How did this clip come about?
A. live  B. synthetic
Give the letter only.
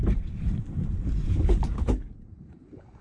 B